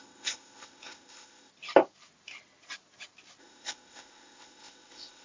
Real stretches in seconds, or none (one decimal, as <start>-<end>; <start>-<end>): 1.5-3.4